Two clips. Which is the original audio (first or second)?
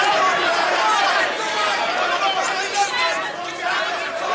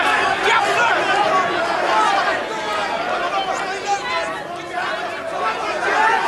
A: second